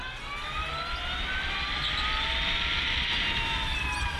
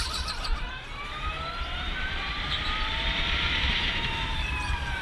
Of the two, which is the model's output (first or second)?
second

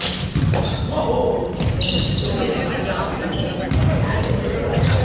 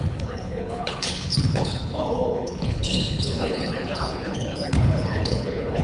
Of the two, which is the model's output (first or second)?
second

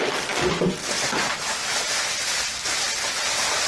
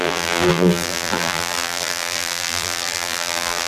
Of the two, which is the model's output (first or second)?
second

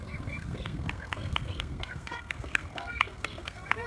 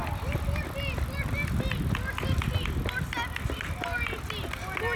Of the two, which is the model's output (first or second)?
first